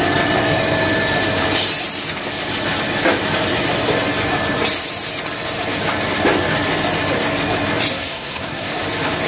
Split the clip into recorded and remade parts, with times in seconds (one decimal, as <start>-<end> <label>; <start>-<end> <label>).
0.0-7.9 recorded; 7.9-8.7 remade; 8.7-9.3 recorded